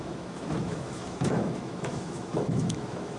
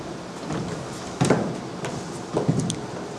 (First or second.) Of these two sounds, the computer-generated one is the first